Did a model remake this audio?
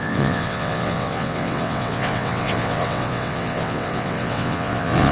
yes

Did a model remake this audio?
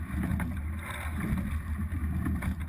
no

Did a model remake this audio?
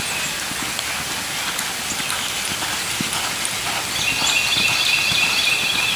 no